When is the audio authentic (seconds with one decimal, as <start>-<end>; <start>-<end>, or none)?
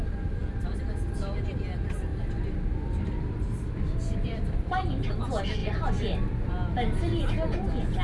0.0-2.1; 5.1-8.0